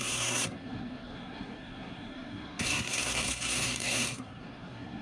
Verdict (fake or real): fake